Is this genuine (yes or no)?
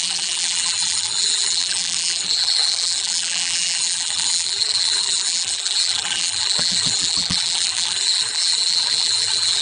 no